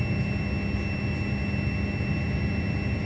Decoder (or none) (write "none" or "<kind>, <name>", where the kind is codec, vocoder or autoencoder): none